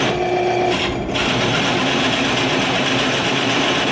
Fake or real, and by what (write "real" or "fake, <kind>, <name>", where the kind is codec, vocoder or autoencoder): real